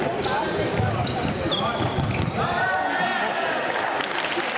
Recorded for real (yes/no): yes